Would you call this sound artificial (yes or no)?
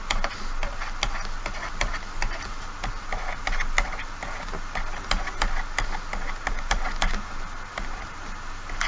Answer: no